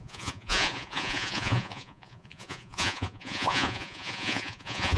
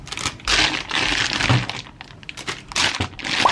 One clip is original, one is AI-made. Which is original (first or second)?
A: second